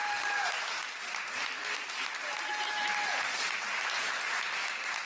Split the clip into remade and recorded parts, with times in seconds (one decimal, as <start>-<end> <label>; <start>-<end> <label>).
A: 0.0-5.1 recorded